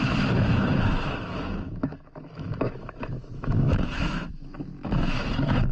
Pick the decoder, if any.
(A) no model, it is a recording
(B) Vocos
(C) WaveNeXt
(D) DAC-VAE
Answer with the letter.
D